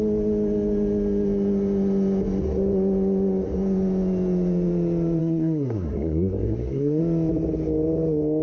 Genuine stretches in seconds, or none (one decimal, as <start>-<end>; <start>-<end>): 0.0-5.2; 7.0-8.4